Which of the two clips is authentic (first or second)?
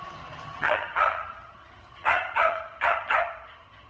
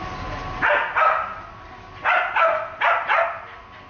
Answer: second